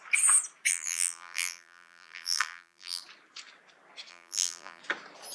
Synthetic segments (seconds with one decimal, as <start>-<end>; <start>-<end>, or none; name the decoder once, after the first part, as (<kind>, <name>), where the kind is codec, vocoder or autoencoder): 0.7-3.0 (vocoder, BigVGAN v2); 4.1-4.8